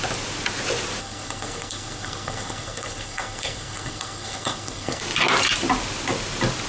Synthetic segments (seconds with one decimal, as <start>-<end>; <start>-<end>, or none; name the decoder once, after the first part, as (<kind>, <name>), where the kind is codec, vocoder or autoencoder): 1.0-5.0 (codec, SNAC)